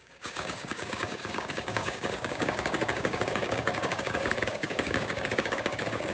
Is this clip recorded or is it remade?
remade